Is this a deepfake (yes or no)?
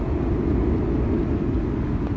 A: no